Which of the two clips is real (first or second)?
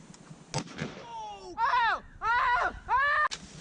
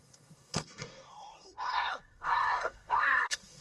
first